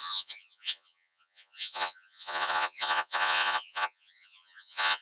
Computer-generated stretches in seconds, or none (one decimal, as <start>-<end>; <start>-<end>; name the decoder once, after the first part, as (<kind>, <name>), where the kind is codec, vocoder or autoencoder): 0.0-5.0 (vocoder, Vocos)